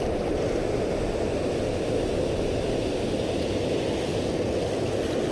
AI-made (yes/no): no